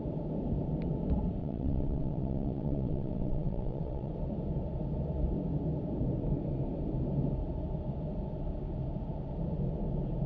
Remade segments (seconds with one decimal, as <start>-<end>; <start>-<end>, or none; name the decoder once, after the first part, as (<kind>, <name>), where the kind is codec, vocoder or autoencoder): 1.4-4.1 (vocoder, WaveNeXt)